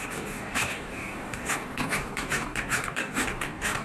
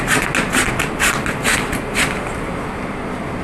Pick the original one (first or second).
second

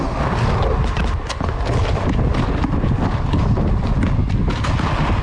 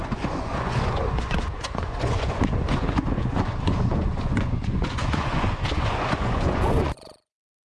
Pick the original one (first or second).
first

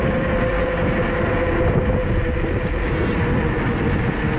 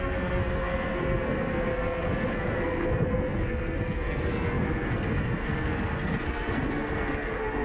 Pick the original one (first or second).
first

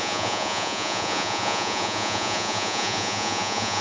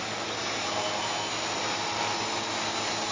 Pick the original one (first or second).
second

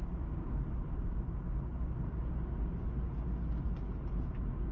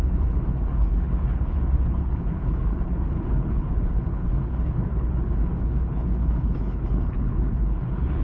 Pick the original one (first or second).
first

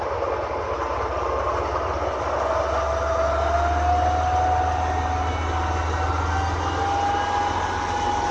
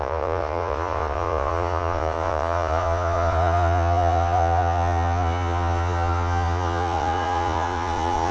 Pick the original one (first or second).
first